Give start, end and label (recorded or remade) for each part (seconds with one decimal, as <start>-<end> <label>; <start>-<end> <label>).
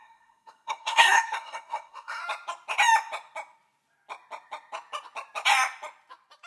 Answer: 0.0-2.2 remade; 2.2-6.5 recorded